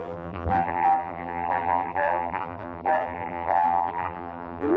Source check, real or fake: fake